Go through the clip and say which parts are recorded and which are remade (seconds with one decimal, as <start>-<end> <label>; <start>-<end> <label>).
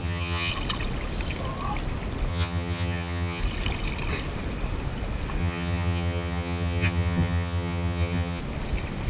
0.0-0.5 remade; 0.5-2.3 recorded; 2.3-3.4 remade; 3.4-5.4 recorded; 5.4-8.4 remade; 8.4-9.1 recorded